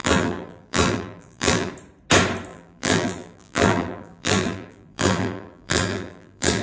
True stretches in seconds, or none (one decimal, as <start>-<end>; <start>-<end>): 1.7-2.5